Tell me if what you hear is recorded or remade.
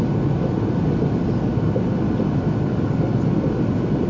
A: recorded